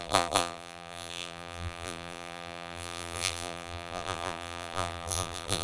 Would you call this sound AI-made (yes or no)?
yes